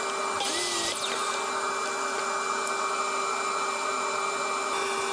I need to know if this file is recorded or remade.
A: recorded